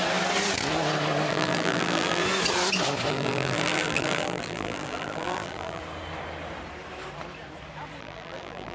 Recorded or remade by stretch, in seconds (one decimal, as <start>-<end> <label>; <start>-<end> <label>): 0.0-1.3 recorded; 1.3-2.2 remade; 2.2-3.1 recorded; 3.1-5.8 remade; 5.8-8.0 recorded; 8.0-8.7 remade